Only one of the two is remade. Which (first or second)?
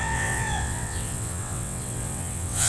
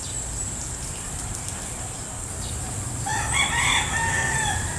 first